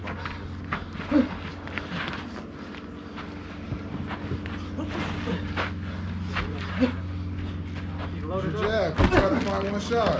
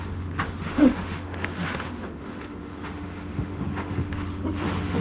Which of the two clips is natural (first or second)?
first